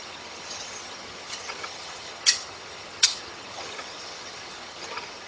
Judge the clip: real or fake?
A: fake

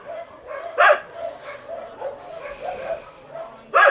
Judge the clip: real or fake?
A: real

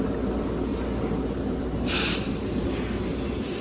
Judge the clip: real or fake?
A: real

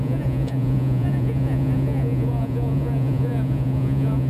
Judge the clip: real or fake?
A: fake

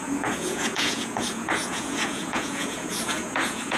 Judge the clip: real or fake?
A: fake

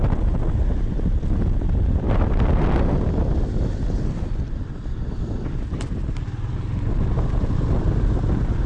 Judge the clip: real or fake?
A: real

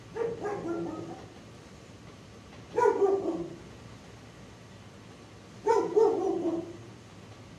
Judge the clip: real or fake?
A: real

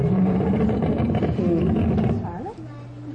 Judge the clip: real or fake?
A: real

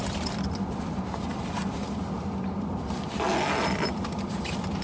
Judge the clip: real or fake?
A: real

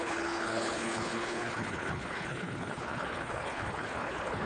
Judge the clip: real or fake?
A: fake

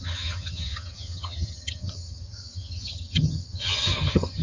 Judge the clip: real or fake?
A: fake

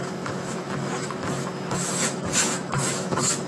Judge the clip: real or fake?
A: fake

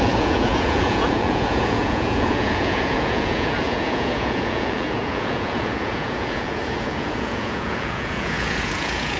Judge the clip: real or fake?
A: fake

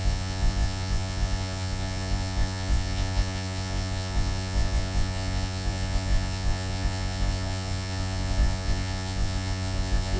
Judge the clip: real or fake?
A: fake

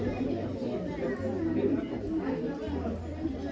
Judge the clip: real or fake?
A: real